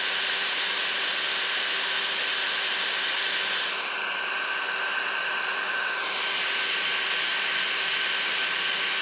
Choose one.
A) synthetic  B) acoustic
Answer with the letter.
B